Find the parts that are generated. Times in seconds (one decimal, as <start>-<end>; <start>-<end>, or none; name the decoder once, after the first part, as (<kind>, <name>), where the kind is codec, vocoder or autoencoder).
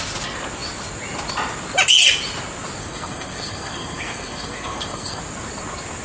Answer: 2.8-5.2 (codec, SNAC)